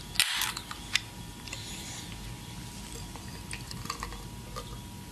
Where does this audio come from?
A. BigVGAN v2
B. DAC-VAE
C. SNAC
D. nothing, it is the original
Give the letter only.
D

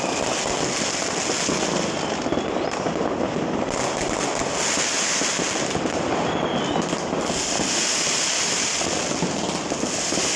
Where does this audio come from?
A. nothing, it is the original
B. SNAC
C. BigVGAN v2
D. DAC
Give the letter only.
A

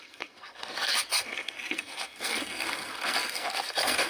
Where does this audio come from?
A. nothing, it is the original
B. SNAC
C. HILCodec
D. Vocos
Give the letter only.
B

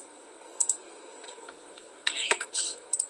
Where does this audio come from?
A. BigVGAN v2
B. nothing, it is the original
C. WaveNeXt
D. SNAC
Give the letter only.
D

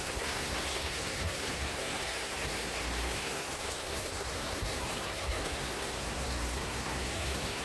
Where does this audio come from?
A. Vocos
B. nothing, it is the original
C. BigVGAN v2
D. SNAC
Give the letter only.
D